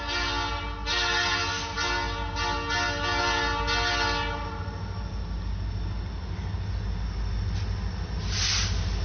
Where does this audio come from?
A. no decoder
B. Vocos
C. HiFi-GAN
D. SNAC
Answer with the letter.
A